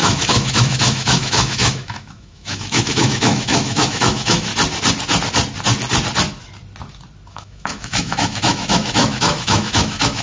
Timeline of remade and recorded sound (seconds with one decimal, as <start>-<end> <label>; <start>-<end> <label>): 0.0-4.5 remade; 4.5-7.3 recorded; 7.3-10.2 remade